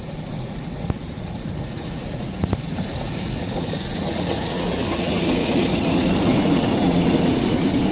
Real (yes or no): no